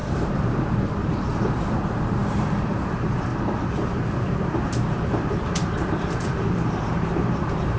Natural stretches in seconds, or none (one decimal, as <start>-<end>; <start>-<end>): 3.3-3.9